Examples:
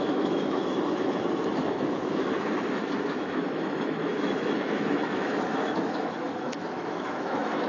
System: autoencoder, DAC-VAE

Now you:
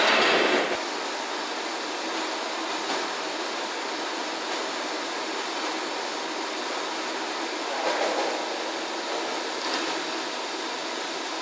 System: none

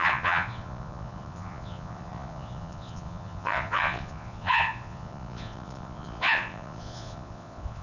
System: vocoder, Vocos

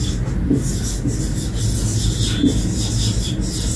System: none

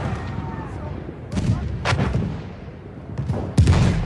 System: none